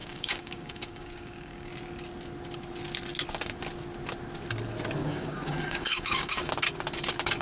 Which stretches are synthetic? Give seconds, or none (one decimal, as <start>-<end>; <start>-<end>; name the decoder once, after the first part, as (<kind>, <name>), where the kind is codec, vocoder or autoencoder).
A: 0.0-1.7 (codec, DAC); 5.0-6.5